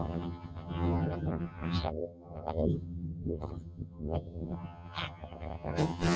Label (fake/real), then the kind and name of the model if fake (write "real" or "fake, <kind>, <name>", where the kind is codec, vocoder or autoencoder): fake, vocoder, HiFi-GAN